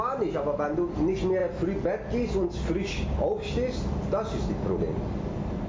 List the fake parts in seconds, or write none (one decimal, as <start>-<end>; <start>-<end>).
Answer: none